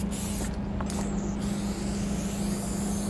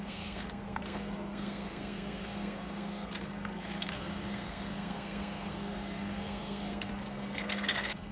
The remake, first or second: second